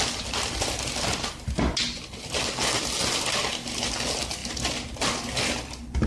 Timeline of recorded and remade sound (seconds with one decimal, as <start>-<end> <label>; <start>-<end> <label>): 0.0-6.1 recorded